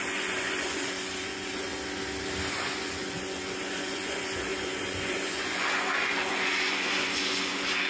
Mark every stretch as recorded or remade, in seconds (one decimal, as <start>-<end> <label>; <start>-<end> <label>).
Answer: 0.0-1.7 remade; 1.7-2.5 recorded; 2.5-7.9 remade